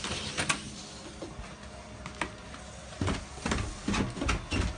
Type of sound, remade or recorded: recorded